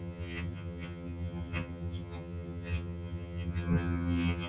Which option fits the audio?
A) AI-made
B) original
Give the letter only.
A